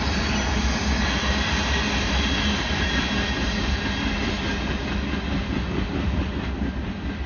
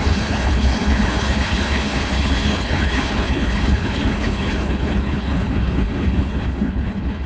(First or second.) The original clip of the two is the first